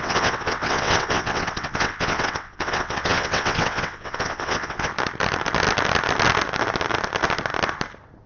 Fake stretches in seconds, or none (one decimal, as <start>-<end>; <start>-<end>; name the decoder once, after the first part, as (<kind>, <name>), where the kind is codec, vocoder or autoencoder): 0.0-4.9 (vocoder, WaveNeXt)

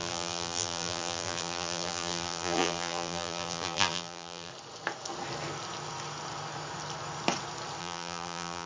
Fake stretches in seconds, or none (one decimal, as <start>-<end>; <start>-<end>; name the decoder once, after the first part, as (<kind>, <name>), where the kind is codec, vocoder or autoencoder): 0.0-4.5 (vocoder, BigVGAN v2); 7.8-8.7

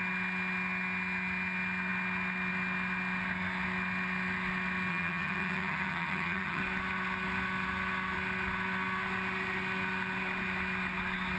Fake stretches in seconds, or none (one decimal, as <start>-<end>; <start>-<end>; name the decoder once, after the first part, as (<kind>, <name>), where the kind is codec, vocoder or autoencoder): 4.9-6.6 (vocoder, HiFi-GAN)

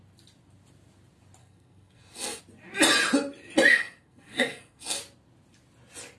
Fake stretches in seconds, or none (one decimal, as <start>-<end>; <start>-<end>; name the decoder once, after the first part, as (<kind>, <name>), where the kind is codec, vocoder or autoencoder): 1.4-2.4 (codec, SNAC); 3.7-5.0

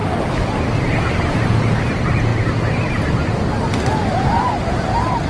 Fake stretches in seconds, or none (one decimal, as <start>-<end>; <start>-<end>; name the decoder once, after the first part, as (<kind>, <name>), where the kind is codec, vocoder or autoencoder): 0.0-0.6 (vocoder, BigVGAN v2)

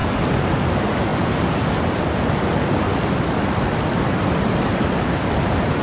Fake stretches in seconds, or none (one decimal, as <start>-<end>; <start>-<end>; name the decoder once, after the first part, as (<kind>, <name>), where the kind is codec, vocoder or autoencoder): none

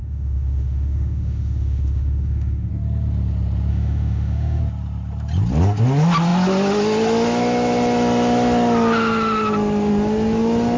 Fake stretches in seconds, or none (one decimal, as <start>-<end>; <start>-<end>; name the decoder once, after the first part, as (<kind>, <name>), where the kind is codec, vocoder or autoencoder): 0.0-2.7 (autoencoder, DAC-VAE); 3.7-4.6